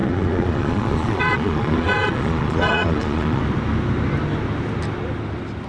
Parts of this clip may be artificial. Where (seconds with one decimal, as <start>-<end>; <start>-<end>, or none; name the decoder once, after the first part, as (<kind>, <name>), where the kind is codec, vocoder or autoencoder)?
0.0-3.4 (vocoder, Vocos)

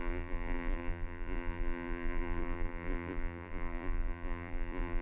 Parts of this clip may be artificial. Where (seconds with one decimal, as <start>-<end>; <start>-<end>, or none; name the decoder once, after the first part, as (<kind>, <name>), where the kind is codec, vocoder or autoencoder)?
0.0-5.0 (vocoder, BigVGAN v2)